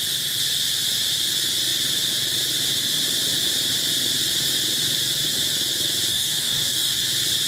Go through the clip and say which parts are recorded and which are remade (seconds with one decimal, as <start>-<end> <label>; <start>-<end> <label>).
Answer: 0.0-6.1 recorded; 6.1-7.0 remade; 7.0-7.5 recorded